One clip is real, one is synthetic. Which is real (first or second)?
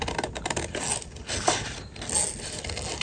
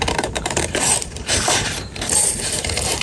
first